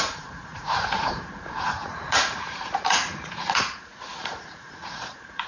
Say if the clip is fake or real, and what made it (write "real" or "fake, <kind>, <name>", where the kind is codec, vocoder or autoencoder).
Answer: fake, vocoder, Vocos